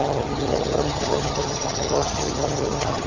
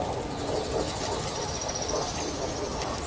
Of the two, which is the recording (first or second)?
second